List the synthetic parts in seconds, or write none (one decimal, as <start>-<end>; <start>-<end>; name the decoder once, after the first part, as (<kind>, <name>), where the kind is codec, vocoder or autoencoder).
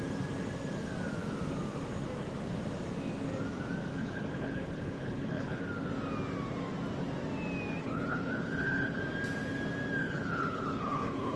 3.9-5.6 (codec, HILCodec); 7.8-9.0; 10.0-11.4